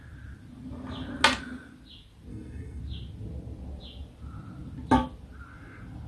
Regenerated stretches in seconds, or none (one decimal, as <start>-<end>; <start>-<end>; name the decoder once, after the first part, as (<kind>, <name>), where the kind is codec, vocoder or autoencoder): 2.3-2.8 (codec, SNAC)

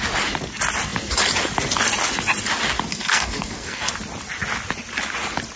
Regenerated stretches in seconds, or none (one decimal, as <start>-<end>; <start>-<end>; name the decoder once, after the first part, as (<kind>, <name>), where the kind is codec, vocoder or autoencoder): 2.9-3.9 (codec, SNAC)

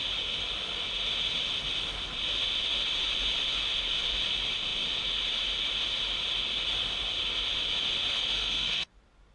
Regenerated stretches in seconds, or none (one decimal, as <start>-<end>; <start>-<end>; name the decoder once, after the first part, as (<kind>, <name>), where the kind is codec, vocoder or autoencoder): 8.1-8.9 (codec, SNAC)

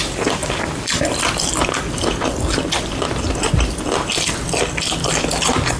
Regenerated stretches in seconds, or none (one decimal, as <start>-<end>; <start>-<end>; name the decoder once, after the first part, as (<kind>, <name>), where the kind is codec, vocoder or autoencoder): none

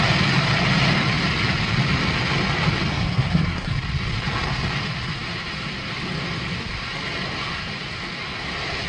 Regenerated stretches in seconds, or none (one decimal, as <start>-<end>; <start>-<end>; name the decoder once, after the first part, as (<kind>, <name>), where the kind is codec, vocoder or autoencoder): 2.9-3.7 (codec, SNAC)